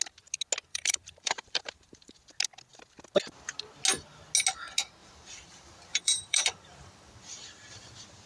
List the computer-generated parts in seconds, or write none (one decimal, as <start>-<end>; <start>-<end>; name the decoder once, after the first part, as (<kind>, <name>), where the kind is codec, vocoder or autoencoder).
0.7-2.2 (vocoder, BigVGAN v2); 5.0-8.3